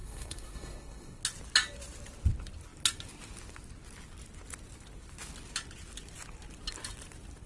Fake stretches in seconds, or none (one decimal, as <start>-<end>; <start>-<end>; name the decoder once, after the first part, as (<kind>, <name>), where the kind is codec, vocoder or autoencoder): 0.0-1.2 (codec, SNAC)

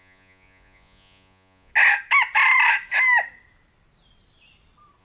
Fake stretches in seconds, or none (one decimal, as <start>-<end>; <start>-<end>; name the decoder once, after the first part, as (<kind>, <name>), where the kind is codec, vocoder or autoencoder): 0.0-1.7 (vocoder, Vocos)

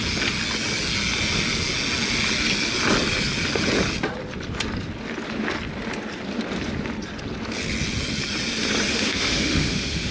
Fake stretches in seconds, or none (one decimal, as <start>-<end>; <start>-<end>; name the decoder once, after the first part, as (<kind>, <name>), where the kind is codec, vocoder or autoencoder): 8.9-10.1 (autoencoder, DAC-VAE)